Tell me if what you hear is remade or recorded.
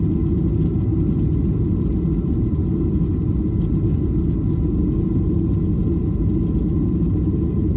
recorded